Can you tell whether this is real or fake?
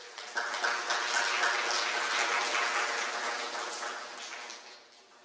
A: real